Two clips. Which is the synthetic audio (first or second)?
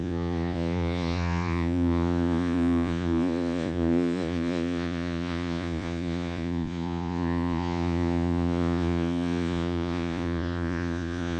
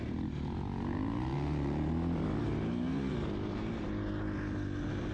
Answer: first